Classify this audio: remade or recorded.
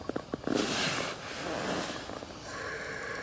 recorded